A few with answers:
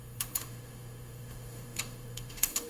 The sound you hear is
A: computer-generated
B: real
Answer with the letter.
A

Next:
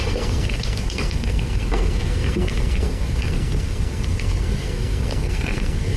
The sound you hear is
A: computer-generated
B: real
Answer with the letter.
A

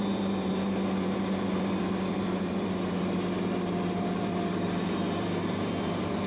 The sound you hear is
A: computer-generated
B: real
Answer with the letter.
A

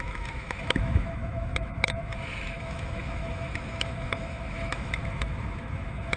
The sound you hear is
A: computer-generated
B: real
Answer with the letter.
A